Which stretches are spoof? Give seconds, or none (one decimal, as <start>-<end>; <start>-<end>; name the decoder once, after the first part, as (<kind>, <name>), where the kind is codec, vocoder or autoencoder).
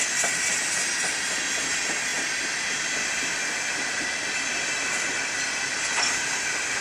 none